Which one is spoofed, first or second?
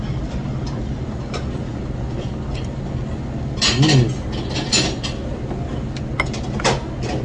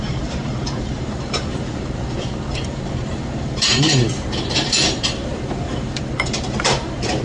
second